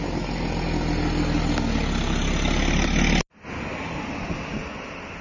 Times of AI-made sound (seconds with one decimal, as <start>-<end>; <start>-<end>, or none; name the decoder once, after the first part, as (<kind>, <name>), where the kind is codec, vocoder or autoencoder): none